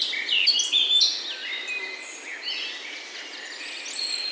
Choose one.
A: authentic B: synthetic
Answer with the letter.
A